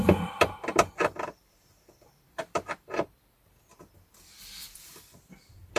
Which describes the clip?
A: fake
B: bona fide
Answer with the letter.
A